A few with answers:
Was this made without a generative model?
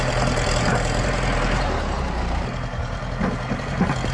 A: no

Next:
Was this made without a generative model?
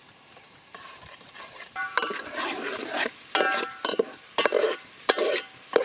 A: no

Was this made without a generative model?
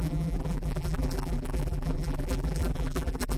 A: no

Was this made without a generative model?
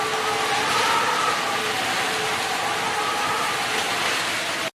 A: yes